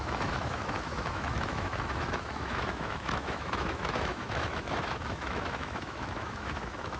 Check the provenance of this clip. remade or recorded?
remade